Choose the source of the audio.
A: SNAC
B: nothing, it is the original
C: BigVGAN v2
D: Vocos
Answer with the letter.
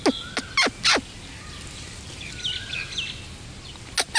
B